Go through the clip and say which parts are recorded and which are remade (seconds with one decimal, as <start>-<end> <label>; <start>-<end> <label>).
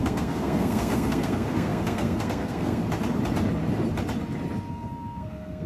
0.0-2.8 remade; 2.8-4.7 recorded; 4.7-5.7 remade